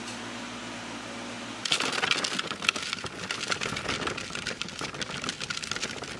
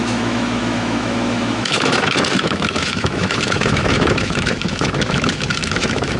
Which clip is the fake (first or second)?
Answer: second